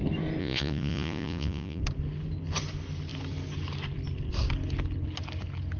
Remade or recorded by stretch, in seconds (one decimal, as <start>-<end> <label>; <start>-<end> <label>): 0.0-0.4 recorded; 0.4-1.8 remade; 1.8-5.8 recorded